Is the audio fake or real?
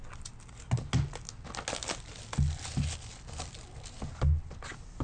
real